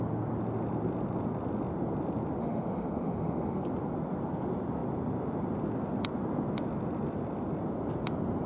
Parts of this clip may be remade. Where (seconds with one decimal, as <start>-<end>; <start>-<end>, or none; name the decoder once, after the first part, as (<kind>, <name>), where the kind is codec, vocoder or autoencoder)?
2.4-3.6 (autoencoder, DAC-VAE)